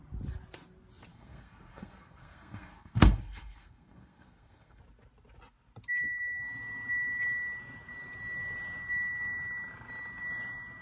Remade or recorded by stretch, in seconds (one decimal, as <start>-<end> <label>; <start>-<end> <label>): 0.0-1.1 recorded; 1.1-4.8 remade; 4.8-10.8 recorded